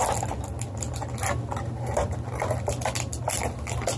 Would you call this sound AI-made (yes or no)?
no